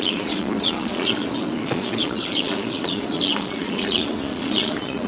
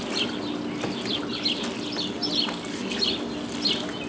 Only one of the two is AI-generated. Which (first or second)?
first